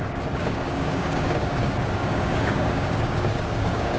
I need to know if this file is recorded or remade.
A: remade